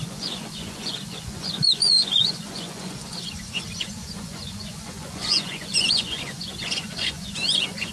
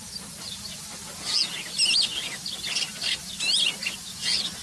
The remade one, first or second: first